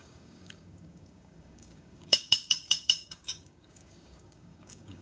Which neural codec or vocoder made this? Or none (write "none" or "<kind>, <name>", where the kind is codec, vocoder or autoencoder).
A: codec, DAC